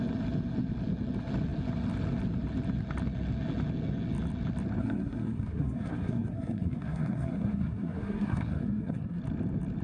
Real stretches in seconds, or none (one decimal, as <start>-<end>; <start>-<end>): 0.0-4.8; 9.2-9.8